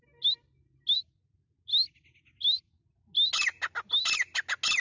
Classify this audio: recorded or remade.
recorded